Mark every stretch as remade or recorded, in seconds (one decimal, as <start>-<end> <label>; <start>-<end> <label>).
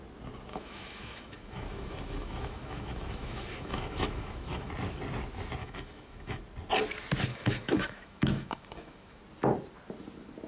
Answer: 0.0-0.5 recorded; 0.5-4.7 remade; 4.7-5.6 recorded; 5.6-6.4 remade; 6.4-7.3 recorded; 7.3-9.2 remade; 9.2-10.5 recorded